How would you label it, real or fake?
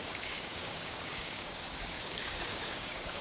fake